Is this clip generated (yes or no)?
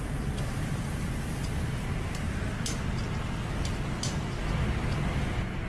no